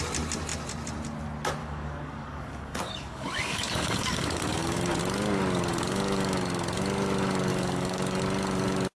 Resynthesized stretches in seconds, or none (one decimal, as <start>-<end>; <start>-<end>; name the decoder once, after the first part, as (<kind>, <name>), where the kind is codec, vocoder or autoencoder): 1.6-5.0 (codec, DAC); 5.7-6.4; 7.5-8.2